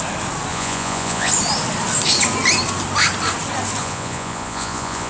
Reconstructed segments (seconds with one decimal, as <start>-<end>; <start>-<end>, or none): 0.5-1.3; 3.8-5.1